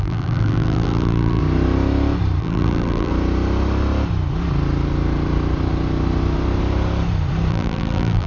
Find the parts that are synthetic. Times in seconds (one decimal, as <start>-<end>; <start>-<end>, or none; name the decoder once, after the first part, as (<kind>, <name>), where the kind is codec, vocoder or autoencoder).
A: 0.0-1.4 (vocoder, BigVGAN v2); 2.4-3.1; 7.5-8.3